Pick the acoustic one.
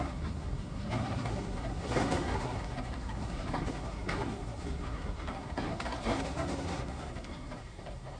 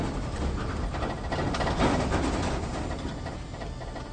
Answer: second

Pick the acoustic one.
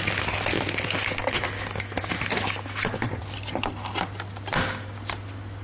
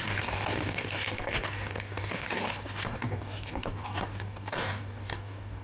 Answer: first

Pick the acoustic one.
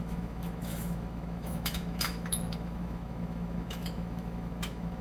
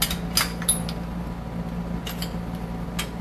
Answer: second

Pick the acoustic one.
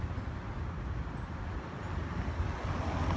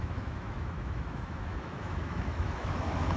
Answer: first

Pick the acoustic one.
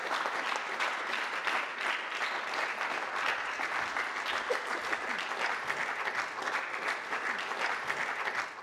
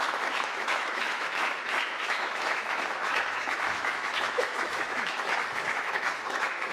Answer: first